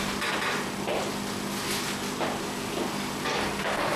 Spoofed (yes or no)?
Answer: no